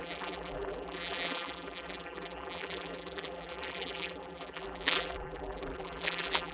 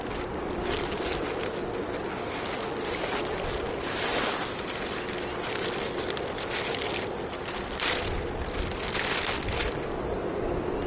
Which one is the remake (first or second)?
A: first